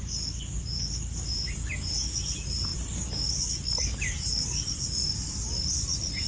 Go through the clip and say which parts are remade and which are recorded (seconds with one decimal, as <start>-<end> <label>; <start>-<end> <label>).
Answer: 0.0-6.3 recorded